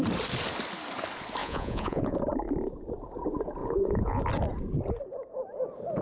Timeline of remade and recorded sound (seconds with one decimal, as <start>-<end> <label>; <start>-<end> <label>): 0.0-1.4 recorded; 1.4-2.2 remade; 2.2-3.6 recorded; 3.6-4.2 remade; 4.2-6.0 recorded